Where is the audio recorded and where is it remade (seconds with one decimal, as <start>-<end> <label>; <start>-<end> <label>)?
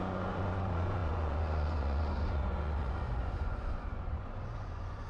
0.0-5.1 remade